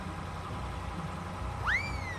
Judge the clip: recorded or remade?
recorded